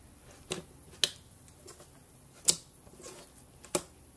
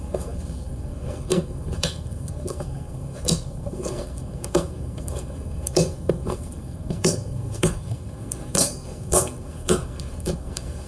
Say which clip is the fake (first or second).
second